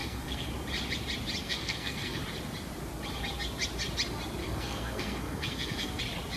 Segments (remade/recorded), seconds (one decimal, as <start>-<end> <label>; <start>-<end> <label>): 0.0-0.5 remade; 0.5-1.4 recorded; 1.4-2.2 remade; 2.2-4.4 recorded; 4.4-6.0 remade; 6.0-6.4 recorded